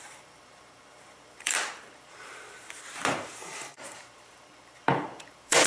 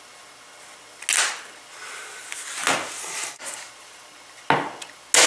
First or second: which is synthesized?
first